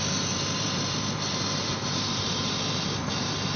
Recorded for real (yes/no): no